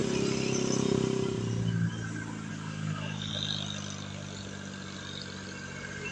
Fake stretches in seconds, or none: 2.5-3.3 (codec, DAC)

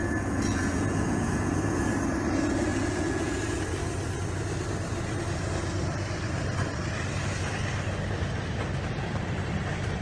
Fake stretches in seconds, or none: 0.0-1.9 (vocoder, Vocos); 2.7-3.4

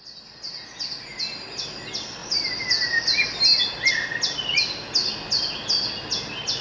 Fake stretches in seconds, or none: none

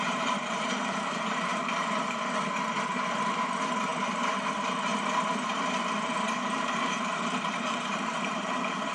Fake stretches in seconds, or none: 0.0-4.9 (vocoder, BigVGAN v2); 5.5-8.9